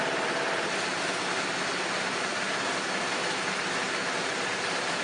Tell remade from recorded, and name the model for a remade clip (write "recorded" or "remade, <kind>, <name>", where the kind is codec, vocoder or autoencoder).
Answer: recorded